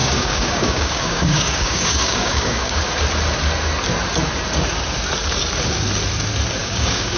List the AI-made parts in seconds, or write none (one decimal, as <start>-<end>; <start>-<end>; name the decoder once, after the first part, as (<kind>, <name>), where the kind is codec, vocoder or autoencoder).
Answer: 0.0-2.8 (codec, DAC); 6.6-7.2